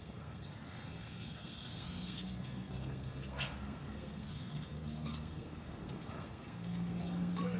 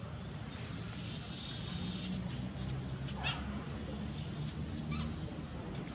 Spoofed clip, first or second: first